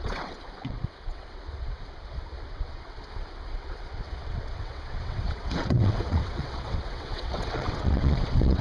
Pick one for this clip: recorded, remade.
remade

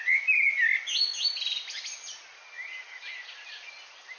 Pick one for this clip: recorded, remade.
recorded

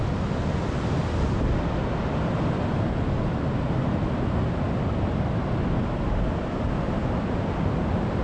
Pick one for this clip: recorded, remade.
recorded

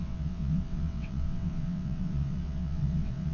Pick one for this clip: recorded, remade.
remade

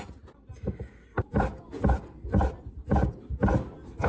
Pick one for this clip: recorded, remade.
recorded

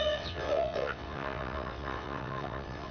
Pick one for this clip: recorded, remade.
remade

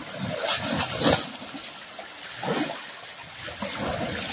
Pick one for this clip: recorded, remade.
recorded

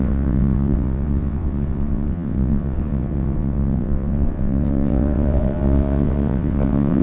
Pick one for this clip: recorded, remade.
remade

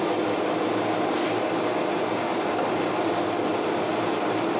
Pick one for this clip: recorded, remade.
recorded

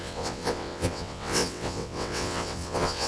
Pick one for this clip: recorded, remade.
remade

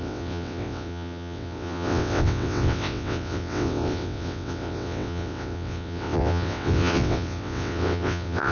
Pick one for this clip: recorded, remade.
remade